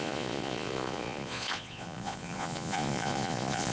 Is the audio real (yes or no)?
no